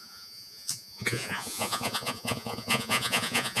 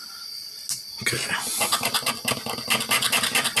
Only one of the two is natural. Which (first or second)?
second